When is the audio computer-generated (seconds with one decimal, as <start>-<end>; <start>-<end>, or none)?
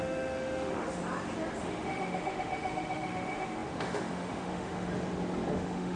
0.0-1.0; 1.6-4.9; 5.5-6.0